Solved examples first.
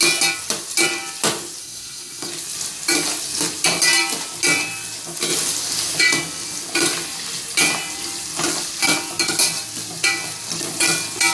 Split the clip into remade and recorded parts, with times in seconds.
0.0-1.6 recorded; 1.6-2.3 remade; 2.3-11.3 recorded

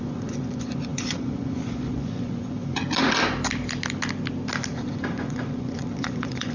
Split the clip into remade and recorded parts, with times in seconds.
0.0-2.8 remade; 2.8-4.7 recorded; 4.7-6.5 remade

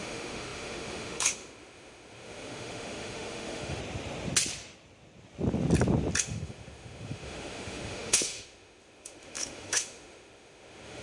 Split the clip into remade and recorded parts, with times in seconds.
0.0-3.8 remade; 3.8-6.2 recorded; 6.2-11.0 remade

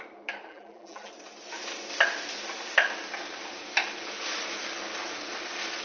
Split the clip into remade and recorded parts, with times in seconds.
0.0-0.5 recorded; 0.5-1.1 remade; 1.1-5.8 recorded

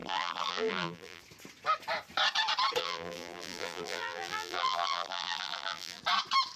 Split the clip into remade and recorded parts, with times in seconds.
0.0-1.2 remade; 1.2-2.8 recorded; 2.8-6.0 remade; 6.0-6.6 recorded

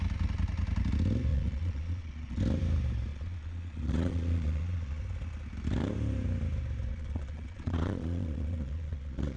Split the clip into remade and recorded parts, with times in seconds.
0.0-1.3 recorded; 1.3-2.4 remade; 2.4-3.1 recorded; 3.1-5.0 remade; 5.0-6.9 recorded; 6.9-9.4 remade

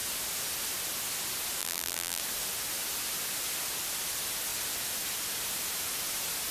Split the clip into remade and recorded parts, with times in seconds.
0.0-1.6 recorded; 1.6-2.2 remade; 2.2-6.5 recorded